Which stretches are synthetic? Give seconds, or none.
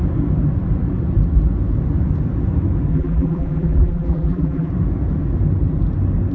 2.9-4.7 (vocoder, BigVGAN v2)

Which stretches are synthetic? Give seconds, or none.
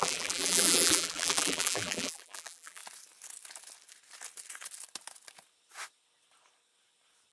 0.0-2.8 (vocoder, BigVGAN v2)